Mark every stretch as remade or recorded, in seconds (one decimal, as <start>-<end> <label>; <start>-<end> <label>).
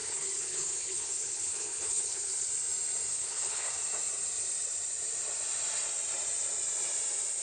0.0-2.5 remade; 2.5-3.1 recorded; 3.1-3.7 remade; 3.7-7.4 recorded